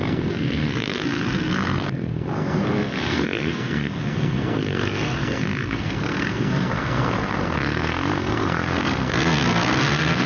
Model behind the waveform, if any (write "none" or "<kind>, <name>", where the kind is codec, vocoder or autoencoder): codec, SNAC